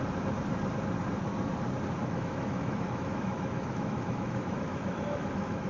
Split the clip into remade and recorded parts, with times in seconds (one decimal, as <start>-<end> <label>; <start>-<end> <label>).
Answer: 0.0-2.0 recorded; 2.0-5.7 remade